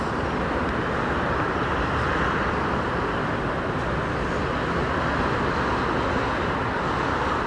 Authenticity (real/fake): real